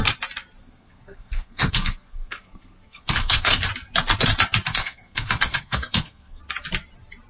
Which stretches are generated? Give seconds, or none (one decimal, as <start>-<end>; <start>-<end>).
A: 0.6-3.7; 4.7-6.4